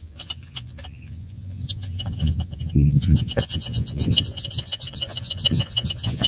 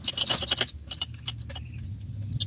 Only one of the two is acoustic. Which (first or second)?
second